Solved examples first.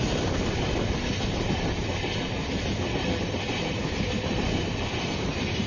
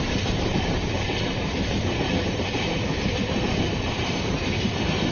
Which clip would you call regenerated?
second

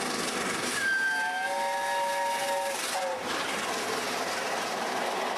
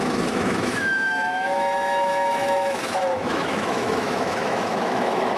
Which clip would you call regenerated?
second